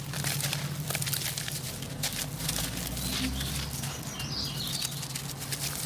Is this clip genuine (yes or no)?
yes